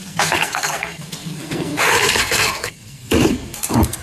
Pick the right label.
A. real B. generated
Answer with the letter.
B